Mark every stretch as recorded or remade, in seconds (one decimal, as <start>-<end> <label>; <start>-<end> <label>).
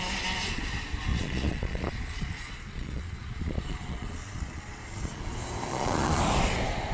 0.0-1.1 recorded; 1.1-5.2 remade; 5.2-5.7 recorded; 5.7-6.2 remade; 6.2-6.9 recorded